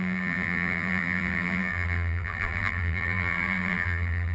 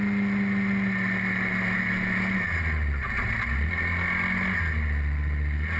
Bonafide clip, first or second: second